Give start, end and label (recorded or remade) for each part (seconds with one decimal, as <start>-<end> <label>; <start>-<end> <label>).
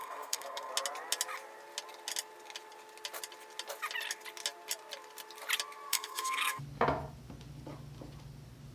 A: 0.0-0.7 remade; 0.7-5.9 recorded; 5.9-6.6 remade; 6.6-8.7 recorded